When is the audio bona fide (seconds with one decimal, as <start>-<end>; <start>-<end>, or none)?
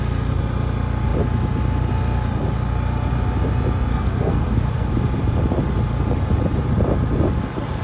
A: 0.0-3.9; 4.9-7.8